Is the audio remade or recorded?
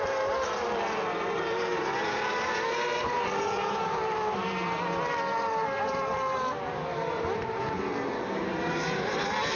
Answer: remade